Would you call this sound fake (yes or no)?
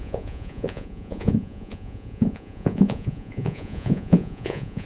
yes